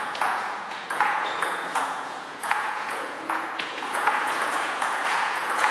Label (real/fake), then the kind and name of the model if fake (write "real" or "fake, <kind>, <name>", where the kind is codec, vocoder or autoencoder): fake, vocoder, Vocos